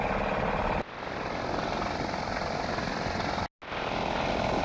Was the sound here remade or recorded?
recorded